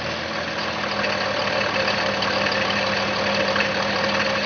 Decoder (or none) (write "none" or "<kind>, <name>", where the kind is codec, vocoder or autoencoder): none